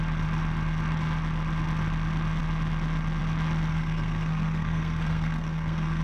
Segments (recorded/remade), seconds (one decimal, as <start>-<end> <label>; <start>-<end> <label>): 0.0-3.7 recorded; 3.7-6.0 remade